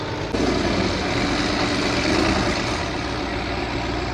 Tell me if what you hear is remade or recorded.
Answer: recorded